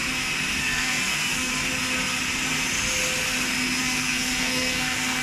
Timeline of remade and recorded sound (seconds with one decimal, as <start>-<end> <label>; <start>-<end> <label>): 0.0-0.6 recorded; 0.6-1.5 remade; 1.5-3.8 recorded; 3.8-5.2 remade